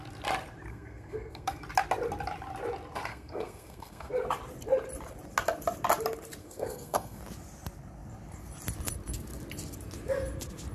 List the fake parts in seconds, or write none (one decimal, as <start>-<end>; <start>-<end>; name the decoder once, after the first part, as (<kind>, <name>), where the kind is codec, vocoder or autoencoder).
0.7-1.6 (codec, SNAC); 3.1-4.1; 6.4-7.2

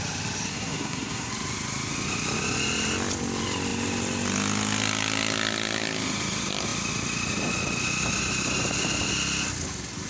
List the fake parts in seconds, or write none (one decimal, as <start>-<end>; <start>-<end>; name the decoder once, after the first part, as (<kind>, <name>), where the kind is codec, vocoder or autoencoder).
0.5-1.3 (codec, SNAC)

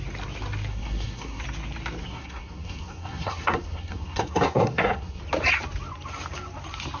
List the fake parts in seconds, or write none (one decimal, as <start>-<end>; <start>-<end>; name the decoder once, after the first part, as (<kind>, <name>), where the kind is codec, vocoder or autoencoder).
0.7-1.4 (codec, SNAC); 2.0-5.2

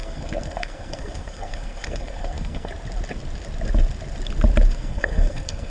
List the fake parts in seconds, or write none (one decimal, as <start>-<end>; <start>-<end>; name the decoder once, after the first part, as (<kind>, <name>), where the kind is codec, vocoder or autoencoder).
0.0-2.7 (codec, SNAC); 4.7-5.7

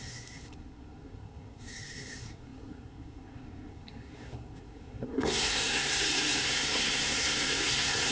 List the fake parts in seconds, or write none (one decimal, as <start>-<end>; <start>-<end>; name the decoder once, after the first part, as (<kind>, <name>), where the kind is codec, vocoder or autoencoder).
0.0-8.1 (codec, SNAC)

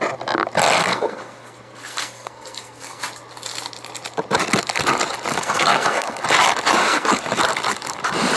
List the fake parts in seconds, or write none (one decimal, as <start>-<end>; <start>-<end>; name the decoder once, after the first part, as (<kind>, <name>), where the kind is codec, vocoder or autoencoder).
0.8-3.0 (codec, SNAC); 5.3-6.2; 6.8-7.4

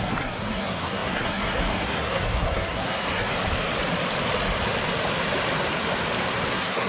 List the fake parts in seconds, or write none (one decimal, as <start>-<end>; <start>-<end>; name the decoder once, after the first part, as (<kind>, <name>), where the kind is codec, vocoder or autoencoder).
0.0-3.3 (codec, SNAC); 6.5-6.9